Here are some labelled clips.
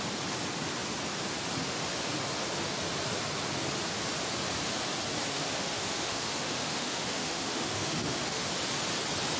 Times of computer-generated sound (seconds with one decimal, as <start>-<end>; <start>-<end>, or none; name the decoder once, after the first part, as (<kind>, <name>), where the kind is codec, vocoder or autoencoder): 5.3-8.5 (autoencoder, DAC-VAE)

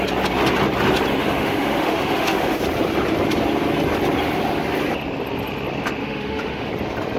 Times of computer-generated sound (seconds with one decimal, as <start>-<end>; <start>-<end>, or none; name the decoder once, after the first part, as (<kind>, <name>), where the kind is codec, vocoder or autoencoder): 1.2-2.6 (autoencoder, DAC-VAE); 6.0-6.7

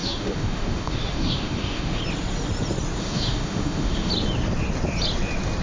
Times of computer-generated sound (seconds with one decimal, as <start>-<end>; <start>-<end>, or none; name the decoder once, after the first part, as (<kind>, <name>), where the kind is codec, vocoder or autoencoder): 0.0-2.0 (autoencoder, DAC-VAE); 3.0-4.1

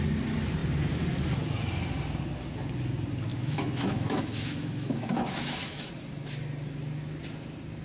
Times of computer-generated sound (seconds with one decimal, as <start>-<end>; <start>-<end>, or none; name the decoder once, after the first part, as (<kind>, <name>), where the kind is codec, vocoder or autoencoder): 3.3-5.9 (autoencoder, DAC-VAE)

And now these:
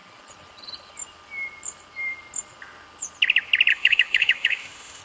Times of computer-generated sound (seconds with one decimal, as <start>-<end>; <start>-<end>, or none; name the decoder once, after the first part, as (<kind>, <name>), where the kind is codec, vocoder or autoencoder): 3.7-5.0 (autoencoder, DAC-VAE)

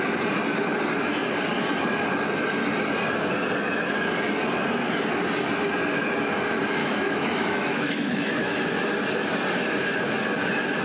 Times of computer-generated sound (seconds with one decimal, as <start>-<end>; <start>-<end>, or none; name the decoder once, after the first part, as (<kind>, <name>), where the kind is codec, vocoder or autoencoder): 6.8-8.7 (autoencoder, DAC-VAE)

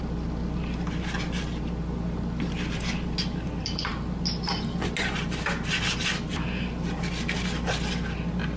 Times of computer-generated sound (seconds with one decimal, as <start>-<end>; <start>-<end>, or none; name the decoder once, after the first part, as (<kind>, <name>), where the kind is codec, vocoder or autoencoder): none